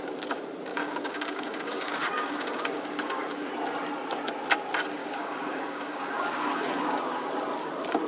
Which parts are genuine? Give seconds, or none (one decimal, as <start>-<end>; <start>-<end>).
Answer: 0.0-0.7; 3.5-5.0; 7.3-8.1